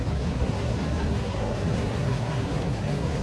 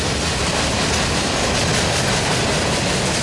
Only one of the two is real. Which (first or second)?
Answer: second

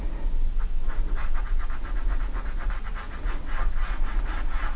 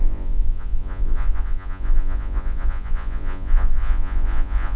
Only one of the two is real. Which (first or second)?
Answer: first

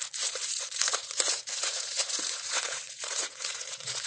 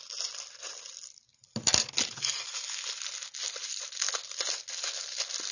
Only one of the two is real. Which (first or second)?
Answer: second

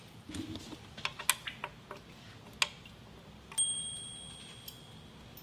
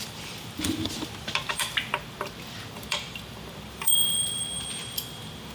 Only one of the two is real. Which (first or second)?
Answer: first